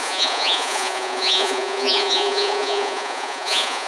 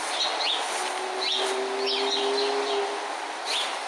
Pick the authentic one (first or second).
second